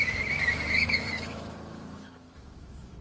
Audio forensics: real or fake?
fake